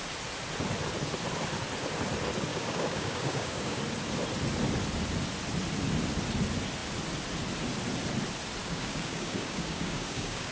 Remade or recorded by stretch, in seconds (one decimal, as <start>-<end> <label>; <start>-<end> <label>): 0.0-2.5 recorded; 2.5-3.8 remade; 3.8-8.6 recorded; 8.6-10.5 remade